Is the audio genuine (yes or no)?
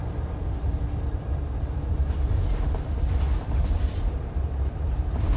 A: yes